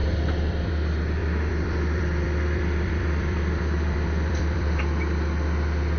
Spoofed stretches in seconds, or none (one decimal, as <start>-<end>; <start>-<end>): 0.0-0.7; 1.2-4.8